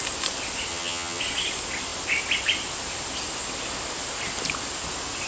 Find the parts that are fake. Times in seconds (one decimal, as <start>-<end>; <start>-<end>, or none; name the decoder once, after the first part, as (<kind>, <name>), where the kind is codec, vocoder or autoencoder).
0.7-1.2 (vocoder, HiFi-GAN)